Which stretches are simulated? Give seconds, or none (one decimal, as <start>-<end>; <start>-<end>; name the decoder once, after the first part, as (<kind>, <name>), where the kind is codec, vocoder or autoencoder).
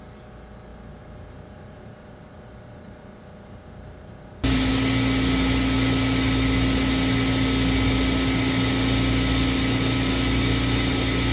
0.7-4.7 (vocoder, BigVGAN v2)